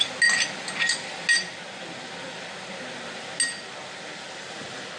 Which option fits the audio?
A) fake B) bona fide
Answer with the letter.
B